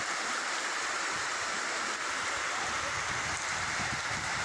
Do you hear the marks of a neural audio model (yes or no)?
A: no